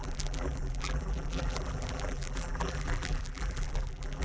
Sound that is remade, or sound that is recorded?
remade